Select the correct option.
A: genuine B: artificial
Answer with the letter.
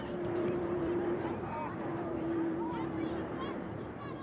B